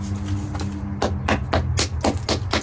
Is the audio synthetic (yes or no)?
no